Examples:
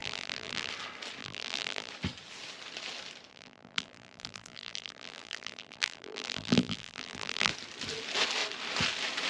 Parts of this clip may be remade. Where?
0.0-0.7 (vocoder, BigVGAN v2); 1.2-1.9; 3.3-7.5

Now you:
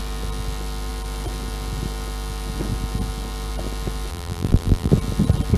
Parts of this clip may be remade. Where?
4.1-4.9 (vocoder, BigVGAN v2)

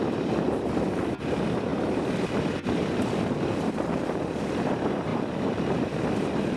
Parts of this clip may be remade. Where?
0.0-5.1 (vocoder, BigVGAN v2); 6.1-6.6